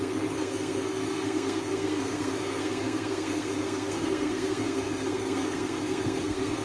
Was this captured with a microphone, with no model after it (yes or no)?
no